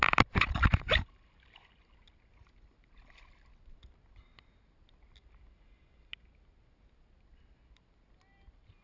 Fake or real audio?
real